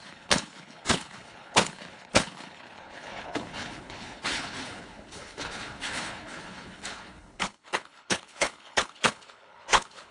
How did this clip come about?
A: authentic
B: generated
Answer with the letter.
B